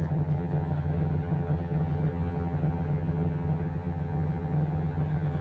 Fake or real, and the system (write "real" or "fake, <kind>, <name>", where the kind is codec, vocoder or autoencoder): fake, vocoder, HiFi-GAN